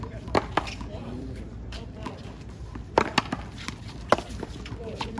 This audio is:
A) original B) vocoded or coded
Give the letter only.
B